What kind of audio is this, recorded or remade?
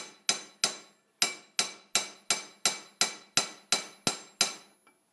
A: recorded